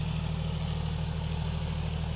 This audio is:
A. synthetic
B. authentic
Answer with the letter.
B